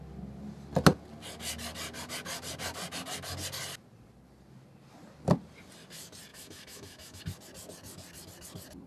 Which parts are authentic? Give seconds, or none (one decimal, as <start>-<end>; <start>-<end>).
0.0-6.3; 7.2-8.9